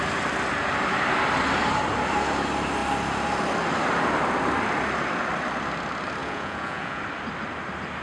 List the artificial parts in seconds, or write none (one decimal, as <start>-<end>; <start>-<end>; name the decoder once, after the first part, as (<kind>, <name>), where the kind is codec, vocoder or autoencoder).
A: 6.2-7.0 (vocoder, Vocos)